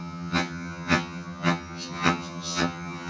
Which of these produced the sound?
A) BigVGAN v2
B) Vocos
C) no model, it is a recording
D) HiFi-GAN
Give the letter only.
D